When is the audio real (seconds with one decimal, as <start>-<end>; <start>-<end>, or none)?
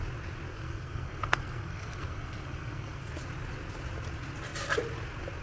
0.0-0.5; 3.1-5.4